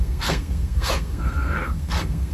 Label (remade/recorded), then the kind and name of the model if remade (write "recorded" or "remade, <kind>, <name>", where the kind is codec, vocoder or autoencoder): remade, codec, SNAC